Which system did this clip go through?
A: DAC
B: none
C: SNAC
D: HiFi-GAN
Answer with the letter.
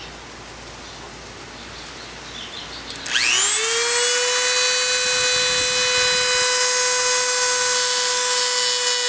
B